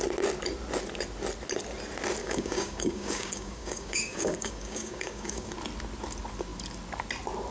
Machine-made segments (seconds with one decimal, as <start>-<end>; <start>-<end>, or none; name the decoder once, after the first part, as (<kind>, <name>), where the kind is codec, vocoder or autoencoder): 2.2-5.5 (codec, DAC)